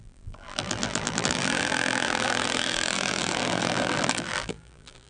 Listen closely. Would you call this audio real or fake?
fake